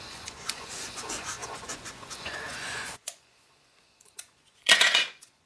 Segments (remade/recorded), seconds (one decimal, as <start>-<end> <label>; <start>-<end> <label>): 0.0-5.5 remade